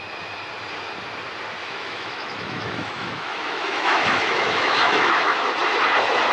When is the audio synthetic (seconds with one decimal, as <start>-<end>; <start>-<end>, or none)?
1.6-5.4